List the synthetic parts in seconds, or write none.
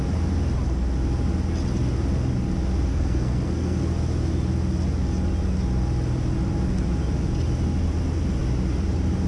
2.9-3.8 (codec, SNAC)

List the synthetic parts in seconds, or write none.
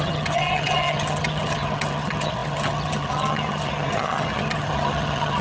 0.0-5.4 (vocoder, HiFi-GAN)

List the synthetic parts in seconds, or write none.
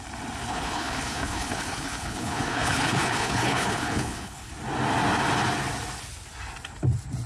0.4-4.5 (codec, HILCodec)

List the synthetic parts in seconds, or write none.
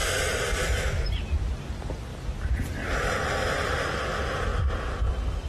0.0-1.7 (vocoder, BigVGAN v2); 2.1-3.5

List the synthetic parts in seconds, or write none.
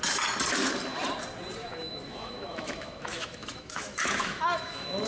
1.6-5.1 (autoencoder, DAC-VAE)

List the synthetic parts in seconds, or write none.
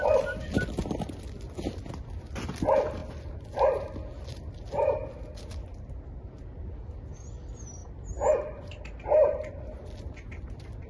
none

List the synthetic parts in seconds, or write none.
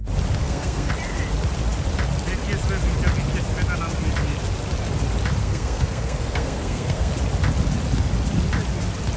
0.4-0.9 (codec, SNAC); 5.4-7.1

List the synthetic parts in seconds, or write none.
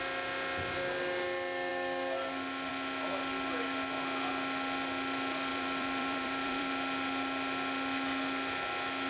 5.5-6.7 (vocoder, BigVGAN v2)